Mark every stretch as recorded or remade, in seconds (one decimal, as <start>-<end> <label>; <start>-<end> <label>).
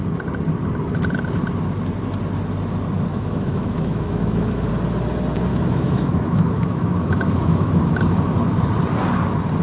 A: 0.0-3.1 recorded; 3.1-4.7 remade; 4.7-5.5 recorded; 5.5-7.8 remade; 7.8-9.6 recorded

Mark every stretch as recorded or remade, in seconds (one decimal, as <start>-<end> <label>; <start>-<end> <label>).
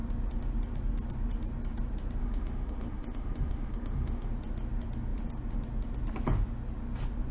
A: 0.0-2.2 recorded; 2.2-4.3 remade; 4.3-7.3 recorded